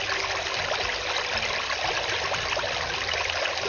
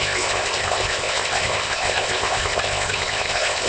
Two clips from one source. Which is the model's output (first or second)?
second